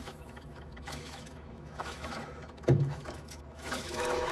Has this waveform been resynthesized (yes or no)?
yes